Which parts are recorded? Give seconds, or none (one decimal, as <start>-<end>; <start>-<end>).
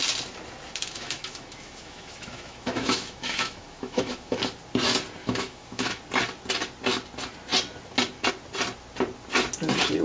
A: 0.0-0.7; 4.4-5.2; 6.0-10.0